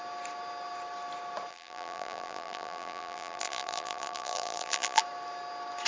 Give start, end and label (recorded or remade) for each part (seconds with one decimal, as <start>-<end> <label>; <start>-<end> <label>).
0.0-1.5 recorded; 1.5-5.0 remade; 5.0-5.9 recorded